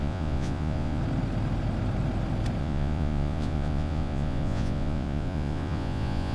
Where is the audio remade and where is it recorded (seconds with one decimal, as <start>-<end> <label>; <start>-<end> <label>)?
0.0-1.0 remade; 1.0-2.6 recorded; 2.6-6.3 remade